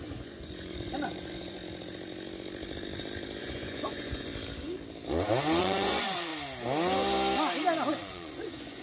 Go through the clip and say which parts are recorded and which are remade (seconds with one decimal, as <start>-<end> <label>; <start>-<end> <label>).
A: 0.0-1.6 remade; 1.6-3.4 recorded; 3.4-4.3 remade; 4.3-5.6 recorded; 5.6-6.3 remade; 6.3-7.9 recorded; 7.9-8.8 remade

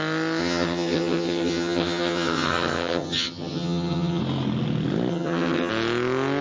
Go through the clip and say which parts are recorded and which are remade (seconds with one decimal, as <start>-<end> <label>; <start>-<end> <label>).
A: 0.0-0.4 recorded; 0.4-4.2 remade; 4.2-5.1 recorded; 5.1-5.7 remade; 5.7-6.4 recorded

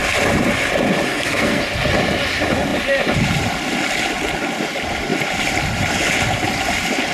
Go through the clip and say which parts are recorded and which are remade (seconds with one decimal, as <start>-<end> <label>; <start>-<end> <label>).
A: 0.0-1.1 recorded; 1.1-1.6 remade; 1.6-7.1 recorded

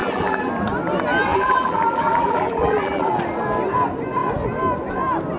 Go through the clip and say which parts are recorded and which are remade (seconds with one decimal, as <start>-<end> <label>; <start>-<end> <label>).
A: 0.0-0.5 remade; 0.5-1.3 recorded; 1.3-3.1 remade; 3.1-5.4 recorded

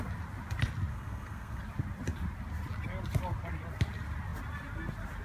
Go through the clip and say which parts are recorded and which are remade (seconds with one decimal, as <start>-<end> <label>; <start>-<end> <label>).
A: 0.0-0.9 recorded; 0.9-1.6 remade; 1.6-5.2 recorded

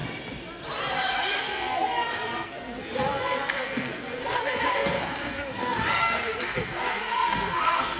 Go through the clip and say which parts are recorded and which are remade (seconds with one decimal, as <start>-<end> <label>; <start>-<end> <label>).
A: 0.0-1.4 recorded; 1.4-8.0 remade

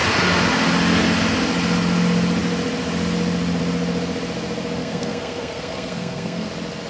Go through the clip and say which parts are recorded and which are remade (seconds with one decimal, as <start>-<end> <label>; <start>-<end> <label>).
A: 0.0-4.8 recorded; 4.8-6.5 remade; 6.5-6.9 recorded

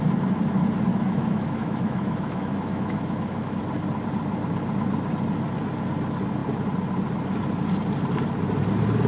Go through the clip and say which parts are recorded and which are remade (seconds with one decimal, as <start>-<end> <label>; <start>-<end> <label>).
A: 0.0-0.9 recorded; 0.9-3.6 remade; 3.6-9.1 recorded